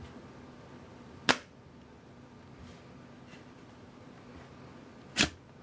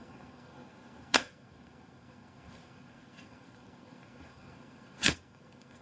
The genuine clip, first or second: first